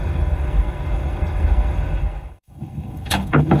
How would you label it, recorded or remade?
remade